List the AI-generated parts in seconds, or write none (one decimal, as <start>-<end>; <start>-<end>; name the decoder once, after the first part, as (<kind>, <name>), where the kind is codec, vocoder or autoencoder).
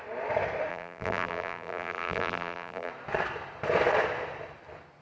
0.7-2.9 (vocoder, BigVGAN v2)